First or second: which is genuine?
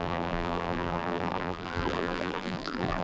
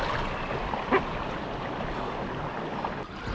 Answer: second